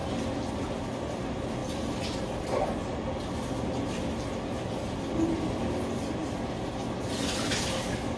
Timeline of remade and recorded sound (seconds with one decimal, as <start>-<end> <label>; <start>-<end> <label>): 0.0-8.2 recorded